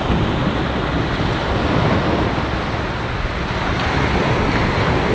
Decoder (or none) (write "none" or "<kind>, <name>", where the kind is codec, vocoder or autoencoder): none